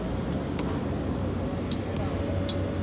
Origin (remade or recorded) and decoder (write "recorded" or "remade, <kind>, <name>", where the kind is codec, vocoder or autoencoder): recorded